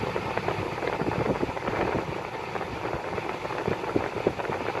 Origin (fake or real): real